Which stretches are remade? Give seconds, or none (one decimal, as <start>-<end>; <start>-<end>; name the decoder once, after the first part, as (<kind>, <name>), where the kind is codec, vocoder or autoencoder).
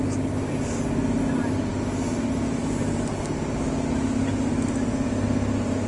none